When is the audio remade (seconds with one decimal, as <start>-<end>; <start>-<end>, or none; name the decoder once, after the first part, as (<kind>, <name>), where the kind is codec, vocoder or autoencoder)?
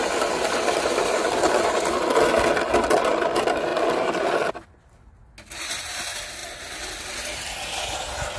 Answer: none